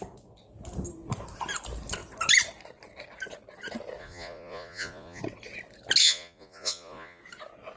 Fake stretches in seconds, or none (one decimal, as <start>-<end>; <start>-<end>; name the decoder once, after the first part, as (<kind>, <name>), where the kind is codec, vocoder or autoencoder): 4.0-5.2 (vocoder, Vocos); 6.0-7.2